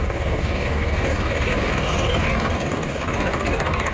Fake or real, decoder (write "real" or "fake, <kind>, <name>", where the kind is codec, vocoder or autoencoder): fake, codec, DAC